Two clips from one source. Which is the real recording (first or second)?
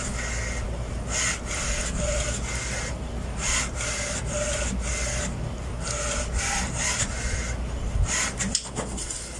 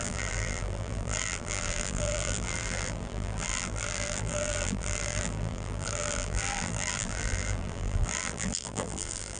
first